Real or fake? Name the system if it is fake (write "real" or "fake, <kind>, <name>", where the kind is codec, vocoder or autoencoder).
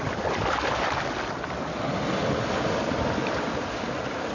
real